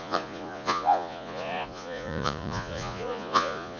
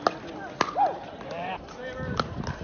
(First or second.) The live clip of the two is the second